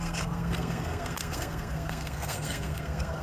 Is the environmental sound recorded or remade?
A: remade